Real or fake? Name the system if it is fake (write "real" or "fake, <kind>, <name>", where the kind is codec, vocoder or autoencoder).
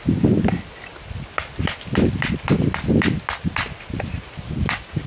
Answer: real